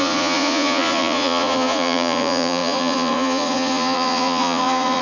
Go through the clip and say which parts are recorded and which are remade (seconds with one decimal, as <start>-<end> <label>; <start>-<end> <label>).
0.0-5.0 remade